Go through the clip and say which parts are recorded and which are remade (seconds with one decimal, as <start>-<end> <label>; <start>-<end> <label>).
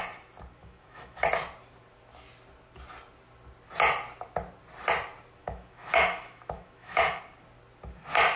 0.0-0.6 recorded; 0.6-1.3 remade; 1.3-5.4 recorded; 5.4-7.2 remade; 7.2-8.4 recorded